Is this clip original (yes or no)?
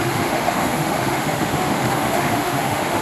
no